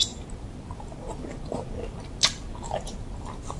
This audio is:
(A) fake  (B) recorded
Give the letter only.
B